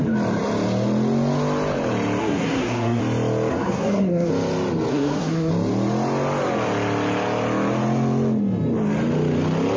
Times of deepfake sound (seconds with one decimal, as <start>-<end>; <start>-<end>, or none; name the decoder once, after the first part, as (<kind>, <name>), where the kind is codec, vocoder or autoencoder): 2.2-3.0 (codec, SNAC); 3.5-4.3; 4.9-5.5